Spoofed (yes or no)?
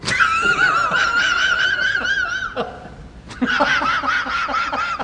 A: no